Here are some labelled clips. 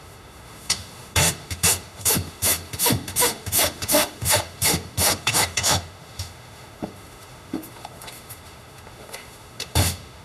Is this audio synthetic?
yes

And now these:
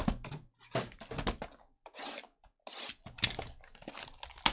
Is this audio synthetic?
no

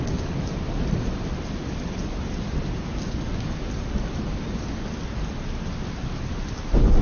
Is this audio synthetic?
no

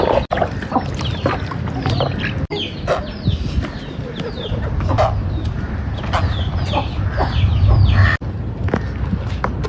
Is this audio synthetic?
no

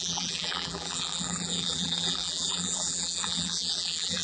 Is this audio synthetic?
yes